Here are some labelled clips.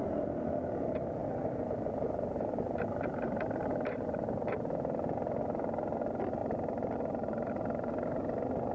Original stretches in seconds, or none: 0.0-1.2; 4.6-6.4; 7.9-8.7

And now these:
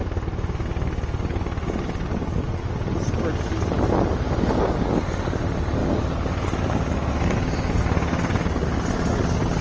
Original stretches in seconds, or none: 0.0-9.6